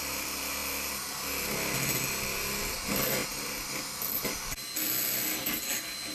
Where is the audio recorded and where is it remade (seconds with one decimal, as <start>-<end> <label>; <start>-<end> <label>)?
0.0-6.1 recorded